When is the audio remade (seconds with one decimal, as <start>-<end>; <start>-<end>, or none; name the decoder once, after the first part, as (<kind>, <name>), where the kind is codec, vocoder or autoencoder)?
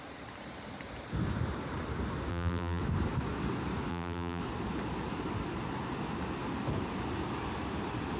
2.3-2.8 (vocoder, BigVGAN v2); 3.9-4.4